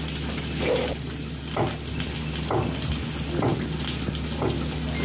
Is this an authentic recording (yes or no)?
yes